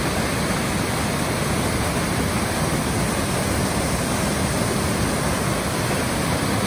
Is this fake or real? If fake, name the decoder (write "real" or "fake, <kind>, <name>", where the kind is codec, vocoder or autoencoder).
real